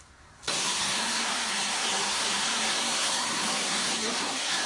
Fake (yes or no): yes